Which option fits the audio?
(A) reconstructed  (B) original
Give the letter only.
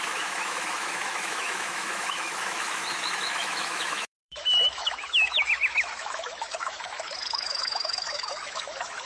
A